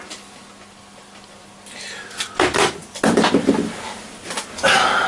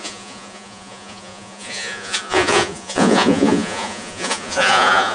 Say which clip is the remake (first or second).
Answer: second